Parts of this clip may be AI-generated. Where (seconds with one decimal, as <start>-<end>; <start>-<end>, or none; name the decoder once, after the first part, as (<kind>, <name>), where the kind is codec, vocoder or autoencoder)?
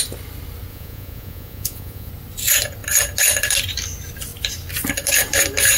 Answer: 0.7-2.1 (vocoder, Vocos)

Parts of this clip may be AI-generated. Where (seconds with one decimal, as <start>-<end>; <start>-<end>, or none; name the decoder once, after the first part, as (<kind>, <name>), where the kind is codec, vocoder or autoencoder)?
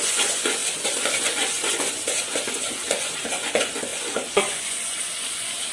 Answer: 0.0-5.7 (vocoder, Vocos)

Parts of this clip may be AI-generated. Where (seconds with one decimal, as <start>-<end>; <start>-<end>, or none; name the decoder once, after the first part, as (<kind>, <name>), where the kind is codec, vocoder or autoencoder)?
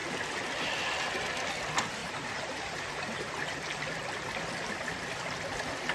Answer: 2.0-3.3 (vocoder, BigVGAN v2)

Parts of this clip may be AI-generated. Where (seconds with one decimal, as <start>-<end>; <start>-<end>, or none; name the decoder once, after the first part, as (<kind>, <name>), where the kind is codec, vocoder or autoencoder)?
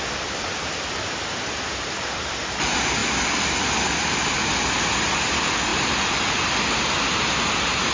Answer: none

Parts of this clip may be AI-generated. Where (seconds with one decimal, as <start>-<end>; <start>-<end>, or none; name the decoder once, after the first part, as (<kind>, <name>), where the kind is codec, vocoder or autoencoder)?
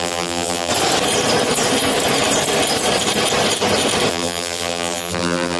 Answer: 0.0-0.7 (vocoder, BigVGAN v2); 4.1-5.6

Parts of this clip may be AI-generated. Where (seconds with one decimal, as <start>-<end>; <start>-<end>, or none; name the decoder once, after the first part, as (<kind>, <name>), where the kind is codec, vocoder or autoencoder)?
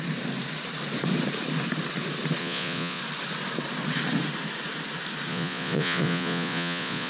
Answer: 2.4-3.0 (vocoder, Vocos); 5.3-7.1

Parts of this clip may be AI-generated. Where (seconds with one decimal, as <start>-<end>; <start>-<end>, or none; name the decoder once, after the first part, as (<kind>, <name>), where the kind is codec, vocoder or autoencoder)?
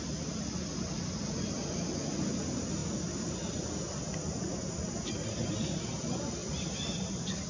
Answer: none